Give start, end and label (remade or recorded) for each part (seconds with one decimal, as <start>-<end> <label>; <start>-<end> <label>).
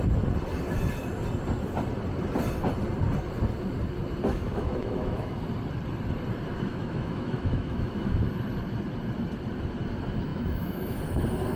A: 0.0-4.3 recorded; 4.3-5.4 remade; 5.4-6.7 recorded; 6.7-8.2 remade; 8.2-10.3 recorded; 10.3-11.0 remade; 11.0-11.6 recorded